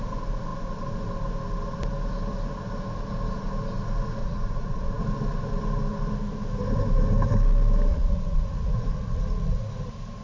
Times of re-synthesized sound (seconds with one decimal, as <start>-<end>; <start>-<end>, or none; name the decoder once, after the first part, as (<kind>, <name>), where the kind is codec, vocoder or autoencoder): 4.2-5.0 (vocoder, Vocos); 7.9-9.7